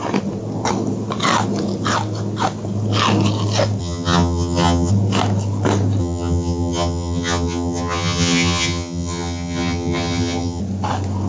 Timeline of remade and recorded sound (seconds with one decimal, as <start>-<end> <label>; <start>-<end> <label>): 0.0-3.8 recorded; 3.8-4.9 remade; 4.9-6.0 recorded; 6.0-10.6 remade; 10.6-11.3 recorded